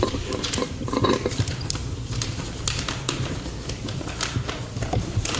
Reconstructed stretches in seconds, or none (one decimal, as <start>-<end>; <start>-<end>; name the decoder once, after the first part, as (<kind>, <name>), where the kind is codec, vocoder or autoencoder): 0.0-5.4 (vocoder, BigVGAN v2)